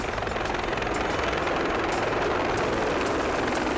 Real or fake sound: real